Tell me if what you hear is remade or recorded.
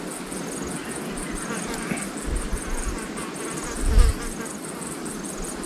recorded